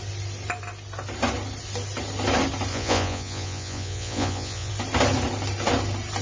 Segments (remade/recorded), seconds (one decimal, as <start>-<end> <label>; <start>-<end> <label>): 0.0-2.7 recorded; 2.7-4.7 remade; 4.7-6.2 recorded